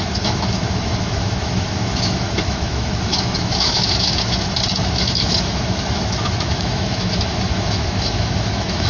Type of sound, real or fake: fake